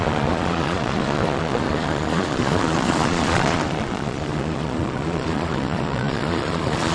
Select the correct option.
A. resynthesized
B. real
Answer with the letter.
A